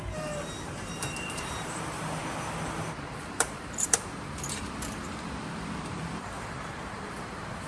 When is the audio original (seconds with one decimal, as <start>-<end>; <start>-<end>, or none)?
2.2-3.2